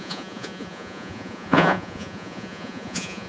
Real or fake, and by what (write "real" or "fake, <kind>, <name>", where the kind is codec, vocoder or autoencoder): fake, vocoder, Vocos